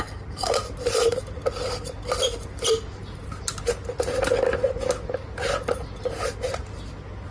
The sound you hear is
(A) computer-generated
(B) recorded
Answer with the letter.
B